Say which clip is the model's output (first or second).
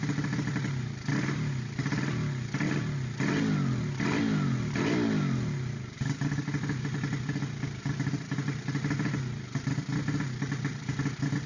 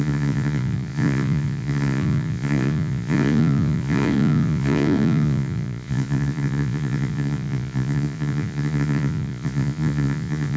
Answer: second